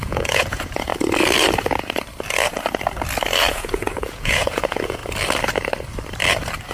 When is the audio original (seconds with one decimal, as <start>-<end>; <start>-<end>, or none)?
0.9-3.5; 5.0-6.7